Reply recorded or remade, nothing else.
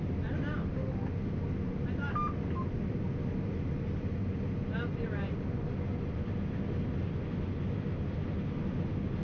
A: recorded